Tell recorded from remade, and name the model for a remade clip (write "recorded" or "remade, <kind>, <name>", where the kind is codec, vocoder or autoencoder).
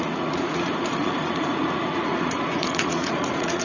remade, vocoder, Vocos